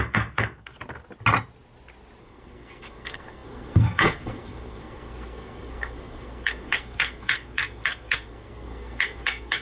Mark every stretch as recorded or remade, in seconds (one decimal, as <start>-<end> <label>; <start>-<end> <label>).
0.0-0.7 remade; 0.7-2.2 recorded; 2.2-9.6 remade